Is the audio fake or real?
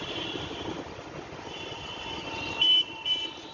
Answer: real